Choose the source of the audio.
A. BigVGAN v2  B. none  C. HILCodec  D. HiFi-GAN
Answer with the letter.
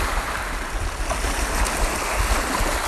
B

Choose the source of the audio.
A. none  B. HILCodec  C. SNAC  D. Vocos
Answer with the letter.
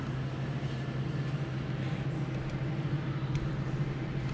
A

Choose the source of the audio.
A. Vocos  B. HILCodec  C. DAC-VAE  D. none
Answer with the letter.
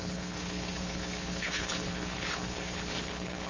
B